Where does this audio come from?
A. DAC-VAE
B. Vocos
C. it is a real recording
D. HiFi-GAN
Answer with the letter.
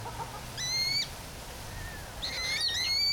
C